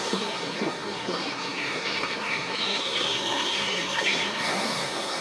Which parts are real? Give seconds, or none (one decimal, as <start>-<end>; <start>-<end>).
none